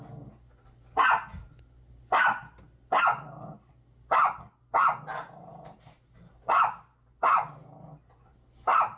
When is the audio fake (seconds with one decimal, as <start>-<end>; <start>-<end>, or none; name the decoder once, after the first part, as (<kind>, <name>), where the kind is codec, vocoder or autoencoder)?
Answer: 8.3-9.0 (vocoder, BigVGAN v2)